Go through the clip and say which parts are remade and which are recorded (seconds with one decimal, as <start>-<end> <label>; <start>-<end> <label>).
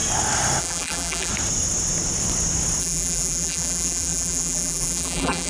0.0-0.6 recorded; 0.6-1.3 remade; 1.3-2.8 recorded; 2.8-5.5 remade